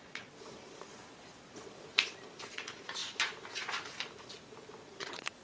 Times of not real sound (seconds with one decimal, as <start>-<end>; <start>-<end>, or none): 0.0-1.9; 2.5-3.0; 4.8-5.4